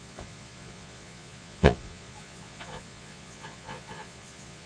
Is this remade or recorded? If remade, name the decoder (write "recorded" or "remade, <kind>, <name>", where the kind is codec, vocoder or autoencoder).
remade, vocoder, Vocos